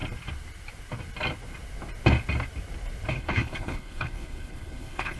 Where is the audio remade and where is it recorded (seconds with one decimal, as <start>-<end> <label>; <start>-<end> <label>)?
0.0-3.1 recorded; 3.1-5.2 remade